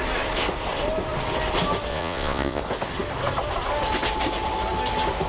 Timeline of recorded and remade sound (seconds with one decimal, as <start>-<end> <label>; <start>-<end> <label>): 0.0-1.9 recorded; 1.9-2.6 remade; 2.6-5.3 recorded

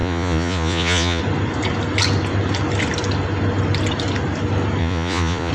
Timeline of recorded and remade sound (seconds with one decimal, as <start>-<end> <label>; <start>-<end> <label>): 0.0-1.2 remade; 1.2-4.8 recorded; 4.8-5.5 remade